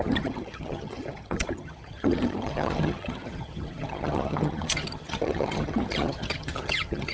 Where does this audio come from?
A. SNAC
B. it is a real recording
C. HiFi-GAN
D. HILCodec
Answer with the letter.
C